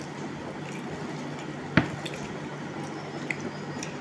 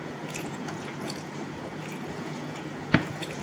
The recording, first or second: first